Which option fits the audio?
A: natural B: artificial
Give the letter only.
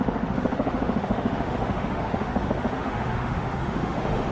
B